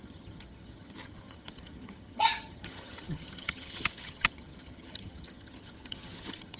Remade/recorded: remade